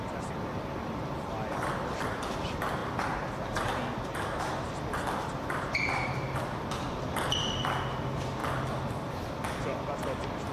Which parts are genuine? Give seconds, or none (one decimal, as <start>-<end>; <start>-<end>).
2.8-6.2; 8.4-9.3